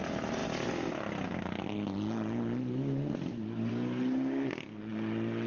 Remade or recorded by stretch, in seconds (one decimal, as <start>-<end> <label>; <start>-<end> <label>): 0.0-5.5 recorded